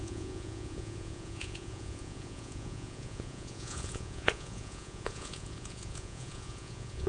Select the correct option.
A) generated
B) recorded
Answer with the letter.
A